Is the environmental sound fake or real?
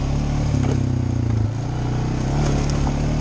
real